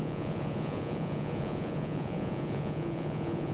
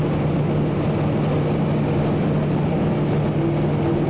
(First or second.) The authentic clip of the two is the second